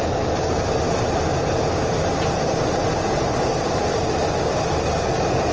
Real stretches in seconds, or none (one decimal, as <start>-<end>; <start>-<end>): 0.0-1.3; 4.6-5.5